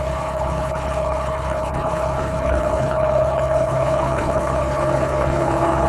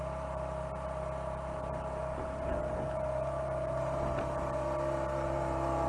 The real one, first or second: second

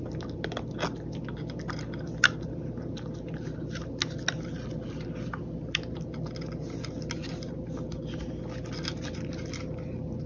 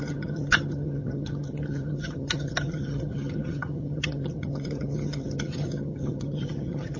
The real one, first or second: first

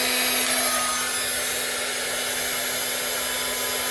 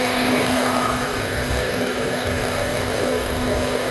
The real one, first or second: first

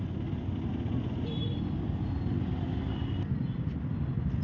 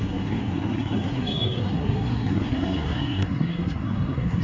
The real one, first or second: first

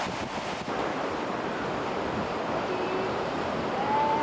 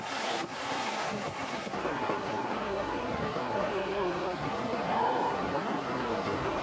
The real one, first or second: first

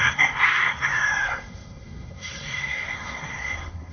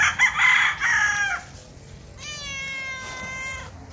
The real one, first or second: second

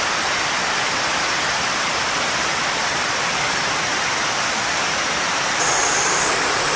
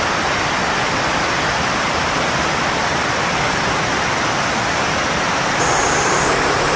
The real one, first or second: second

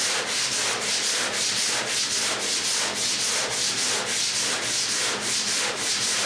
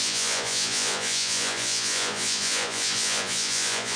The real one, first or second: first